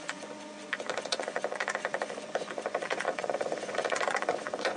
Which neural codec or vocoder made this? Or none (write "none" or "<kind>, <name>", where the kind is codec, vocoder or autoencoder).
vocoder, Vocos